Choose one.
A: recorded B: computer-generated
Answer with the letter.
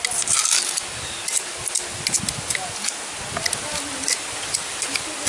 A